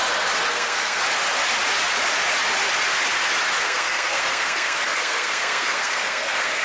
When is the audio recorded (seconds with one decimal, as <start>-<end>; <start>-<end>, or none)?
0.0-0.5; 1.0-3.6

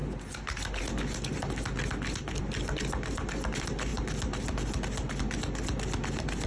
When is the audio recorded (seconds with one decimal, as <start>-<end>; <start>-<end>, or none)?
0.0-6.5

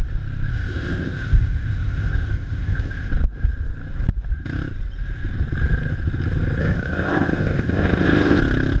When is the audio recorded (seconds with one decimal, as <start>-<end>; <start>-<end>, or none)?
0.0-0.5; 3.1-6.6; 8.4-8.8

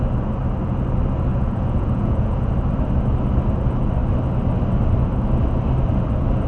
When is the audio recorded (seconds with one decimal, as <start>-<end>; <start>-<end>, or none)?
0.0-1.3; 2.5-6.5

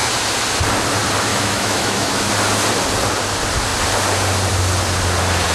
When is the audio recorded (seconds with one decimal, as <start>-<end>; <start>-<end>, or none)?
0.0-1.3; 2.3-5.5